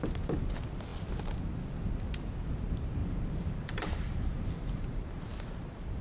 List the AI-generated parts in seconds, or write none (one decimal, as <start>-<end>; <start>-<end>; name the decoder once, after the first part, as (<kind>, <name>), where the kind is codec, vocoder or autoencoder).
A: 3.0-5.2 (vocoder, BigVGAN v2)